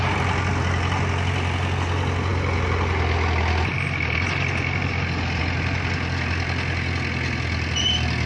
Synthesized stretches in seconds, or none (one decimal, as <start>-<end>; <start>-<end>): none